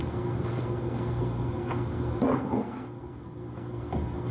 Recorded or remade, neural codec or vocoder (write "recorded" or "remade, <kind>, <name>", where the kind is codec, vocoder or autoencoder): remade, codec, SNAC